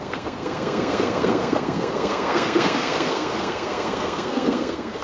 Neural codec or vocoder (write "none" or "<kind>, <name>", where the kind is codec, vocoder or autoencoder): codec, SNAC